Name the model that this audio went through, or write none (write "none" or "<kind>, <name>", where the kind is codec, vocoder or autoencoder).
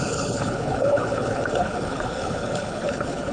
codec, HILCodec